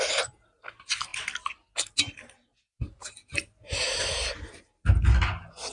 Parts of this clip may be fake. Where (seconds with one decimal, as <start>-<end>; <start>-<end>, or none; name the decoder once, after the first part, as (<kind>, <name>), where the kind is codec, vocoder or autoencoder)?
none